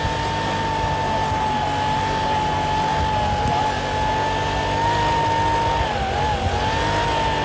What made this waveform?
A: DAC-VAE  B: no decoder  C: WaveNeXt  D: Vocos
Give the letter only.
B